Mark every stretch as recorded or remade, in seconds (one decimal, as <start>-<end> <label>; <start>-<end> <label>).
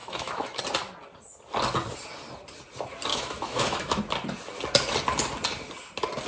0.0-0.6 remade; 0.6-3.1 recorded; 3.1-4.0 remade; 4.0-6.3 recorded